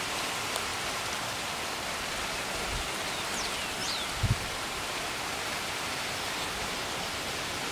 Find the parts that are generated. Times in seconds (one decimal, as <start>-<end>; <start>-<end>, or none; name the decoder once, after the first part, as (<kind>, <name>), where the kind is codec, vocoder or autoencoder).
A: 3.8-6.8 (vocoder, BigVGAN v2)